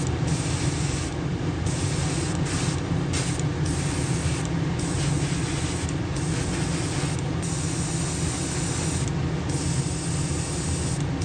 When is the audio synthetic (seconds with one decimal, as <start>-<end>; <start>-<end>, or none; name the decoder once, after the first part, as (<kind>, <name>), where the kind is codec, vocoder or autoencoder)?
1.3-2.6 (vocoder, BigVGAN v2)